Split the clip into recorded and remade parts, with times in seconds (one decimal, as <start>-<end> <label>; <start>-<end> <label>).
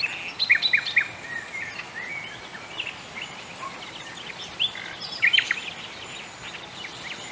0.0-7.3 recorded